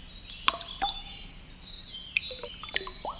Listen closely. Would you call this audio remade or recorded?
recorded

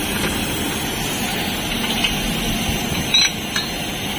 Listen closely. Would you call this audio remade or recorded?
recorded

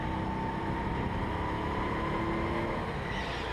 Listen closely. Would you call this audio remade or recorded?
recorded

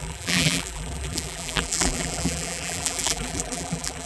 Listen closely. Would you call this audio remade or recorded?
remade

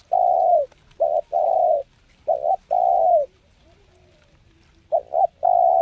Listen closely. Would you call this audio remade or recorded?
recorded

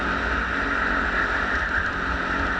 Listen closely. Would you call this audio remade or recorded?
recorded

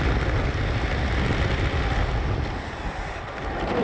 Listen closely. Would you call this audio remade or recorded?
recorded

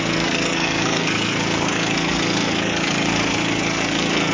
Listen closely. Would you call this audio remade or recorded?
remade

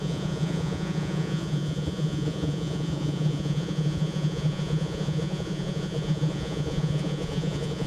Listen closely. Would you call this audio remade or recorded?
remade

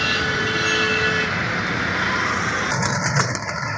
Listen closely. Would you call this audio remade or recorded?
recorded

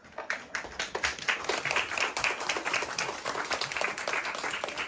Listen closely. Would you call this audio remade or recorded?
recorded